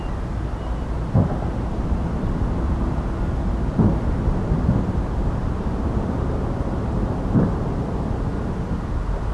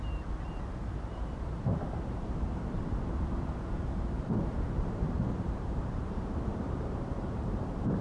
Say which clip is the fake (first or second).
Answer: second